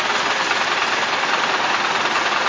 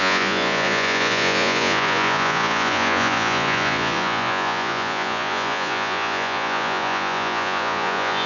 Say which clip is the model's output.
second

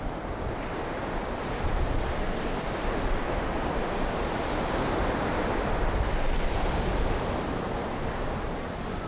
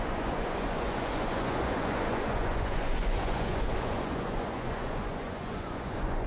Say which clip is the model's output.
second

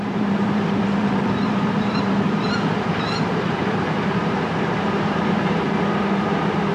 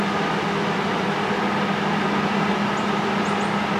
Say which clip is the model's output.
first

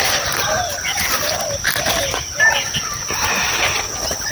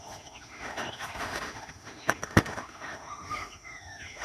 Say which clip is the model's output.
second